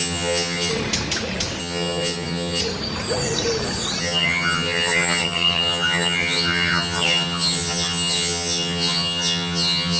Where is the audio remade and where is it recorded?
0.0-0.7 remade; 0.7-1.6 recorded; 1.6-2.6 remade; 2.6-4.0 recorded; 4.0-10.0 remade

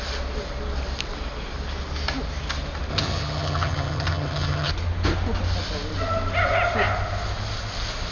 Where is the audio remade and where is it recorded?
0.0-2.9 recorded; 2.9-4.7 remade; 4.7-8.1 recorded